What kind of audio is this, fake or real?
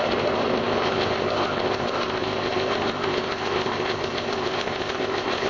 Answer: fake